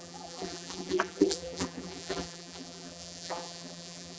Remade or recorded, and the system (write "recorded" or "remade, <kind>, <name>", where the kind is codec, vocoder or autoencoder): remade, vocoder, BigVGAN v2